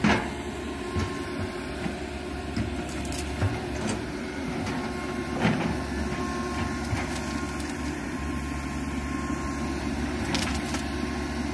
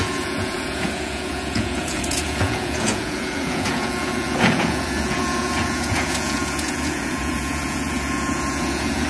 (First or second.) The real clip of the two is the first